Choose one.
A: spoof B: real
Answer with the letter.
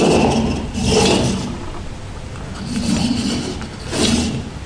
B